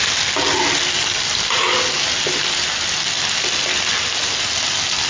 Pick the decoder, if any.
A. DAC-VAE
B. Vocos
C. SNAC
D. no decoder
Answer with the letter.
D